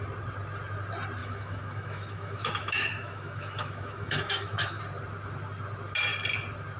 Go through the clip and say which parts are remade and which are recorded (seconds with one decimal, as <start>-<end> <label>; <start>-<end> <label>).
0.0-1.2 recorded; 1.2-4.8 remade; 4.8-6.8 recorded